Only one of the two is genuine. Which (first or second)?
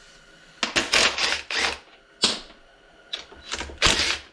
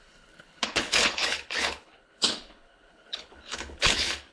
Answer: first